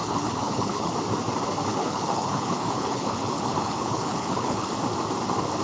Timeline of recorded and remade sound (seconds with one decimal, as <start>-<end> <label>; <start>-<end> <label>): 0.0-0.9 remade; 0.9-1.7 recorded; 1.7-4.7 remade; 4.7-5.6 recorded